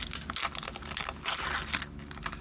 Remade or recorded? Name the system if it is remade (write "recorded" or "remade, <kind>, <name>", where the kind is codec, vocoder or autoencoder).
recorded